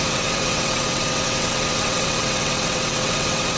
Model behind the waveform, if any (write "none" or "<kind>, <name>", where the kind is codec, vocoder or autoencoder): vocoder, WaveNeXt